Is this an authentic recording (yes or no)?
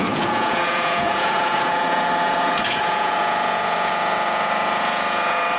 no